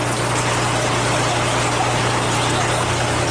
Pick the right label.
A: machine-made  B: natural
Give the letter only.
B